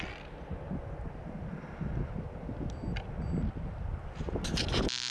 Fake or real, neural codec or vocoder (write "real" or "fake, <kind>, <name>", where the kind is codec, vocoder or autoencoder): real